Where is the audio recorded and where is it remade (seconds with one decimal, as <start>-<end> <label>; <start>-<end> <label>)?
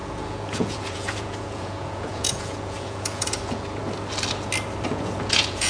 0.0-3.8 remade; 3.8-4.9 recorded; 4.9-5.7 remade